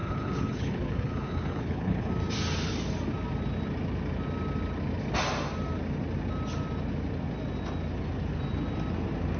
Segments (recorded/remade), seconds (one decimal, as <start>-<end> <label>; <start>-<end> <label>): 0.0-2.1 remade; 2.1-9.4 recorded